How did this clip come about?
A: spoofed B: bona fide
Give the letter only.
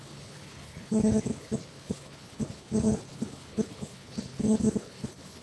A